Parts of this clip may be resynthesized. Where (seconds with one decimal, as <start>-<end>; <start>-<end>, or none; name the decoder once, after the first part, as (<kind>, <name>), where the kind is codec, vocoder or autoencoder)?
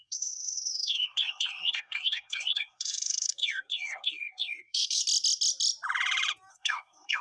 0.0-5.0 (codec, SNAC); 6.5-7.2